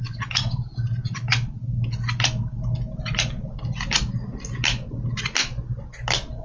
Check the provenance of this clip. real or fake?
real